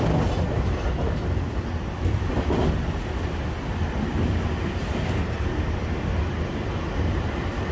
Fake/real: real